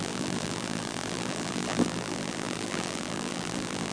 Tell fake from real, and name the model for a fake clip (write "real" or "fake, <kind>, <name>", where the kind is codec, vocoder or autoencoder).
fake, vocoder, BigVGAN v2